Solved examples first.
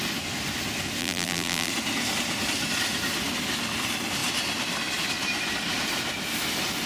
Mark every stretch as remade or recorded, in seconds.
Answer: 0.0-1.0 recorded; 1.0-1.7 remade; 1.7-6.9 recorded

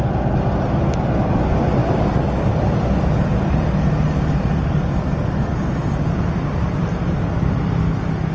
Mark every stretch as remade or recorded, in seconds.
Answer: 0.0-8.3 recorded

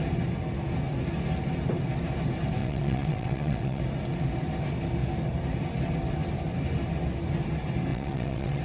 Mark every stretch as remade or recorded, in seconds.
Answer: 0.0-2.6 recorded; 2.6-3.8 remade; 3.8-7.9 recorded; 7.9-8.6 remade

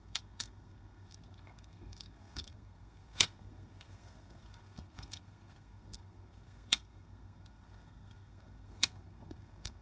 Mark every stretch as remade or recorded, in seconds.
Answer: 0.0-9.8 remade

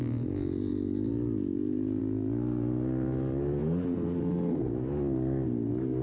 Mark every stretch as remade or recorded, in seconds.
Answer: 0.0-6.0 recorded

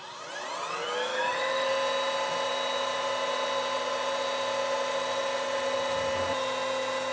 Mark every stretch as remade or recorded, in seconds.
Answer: 0.0-1.1 recorded; 1.1-1.7 remade; 1.7-7.1 recorded

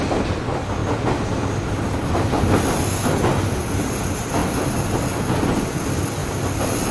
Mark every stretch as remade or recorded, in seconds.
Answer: 0.0-6.9 recorded